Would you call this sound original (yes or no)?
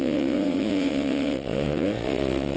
no